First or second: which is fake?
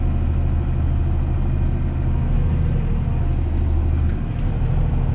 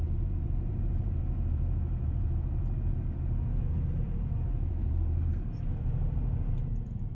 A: second